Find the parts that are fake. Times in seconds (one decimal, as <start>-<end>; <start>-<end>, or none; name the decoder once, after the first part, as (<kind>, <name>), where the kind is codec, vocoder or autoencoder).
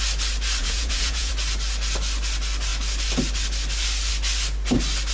0.6-1.3 (vocoder, Vocos)